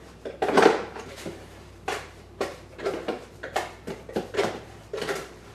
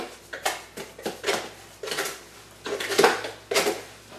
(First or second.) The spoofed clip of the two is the first